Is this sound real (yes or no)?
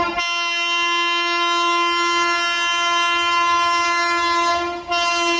yes